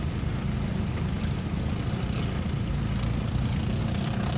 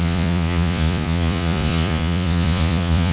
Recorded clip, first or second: first